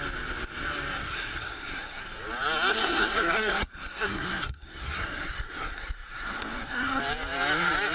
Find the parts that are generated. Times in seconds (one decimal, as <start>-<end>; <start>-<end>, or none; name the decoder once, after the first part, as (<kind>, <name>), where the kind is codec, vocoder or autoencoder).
1.0-2.0 (codec, SNAC); 2.7-7.0